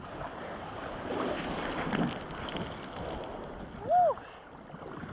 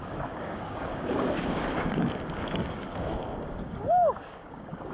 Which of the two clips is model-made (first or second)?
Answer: second